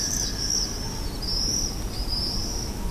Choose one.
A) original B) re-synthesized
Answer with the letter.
A